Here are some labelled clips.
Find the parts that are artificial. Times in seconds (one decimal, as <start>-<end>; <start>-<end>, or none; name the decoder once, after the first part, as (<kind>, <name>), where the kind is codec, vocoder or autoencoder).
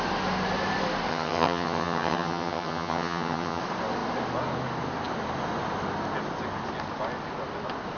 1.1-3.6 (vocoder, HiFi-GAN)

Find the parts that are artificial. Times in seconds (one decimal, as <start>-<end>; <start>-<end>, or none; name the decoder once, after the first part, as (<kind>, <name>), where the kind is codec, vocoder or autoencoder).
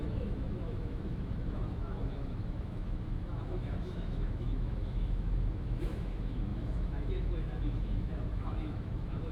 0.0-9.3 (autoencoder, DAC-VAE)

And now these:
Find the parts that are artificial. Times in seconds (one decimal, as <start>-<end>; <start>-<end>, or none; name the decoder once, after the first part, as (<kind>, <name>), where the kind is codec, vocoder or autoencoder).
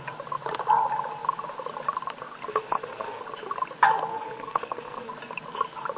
2.5-3.2 (codec, SNAC); 4.1-5.1